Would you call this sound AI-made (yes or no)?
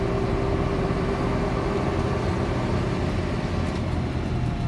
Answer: no